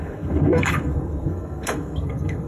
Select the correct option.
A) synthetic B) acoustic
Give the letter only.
A